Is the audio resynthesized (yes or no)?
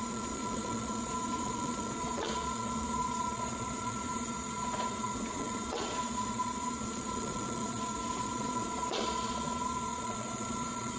yes